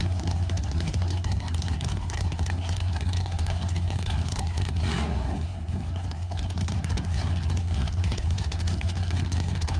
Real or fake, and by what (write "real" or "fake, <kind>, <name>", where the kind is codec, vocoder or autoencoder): fake, codec, SNAC